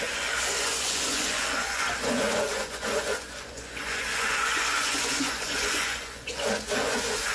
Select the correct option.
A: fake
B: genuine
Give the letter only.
A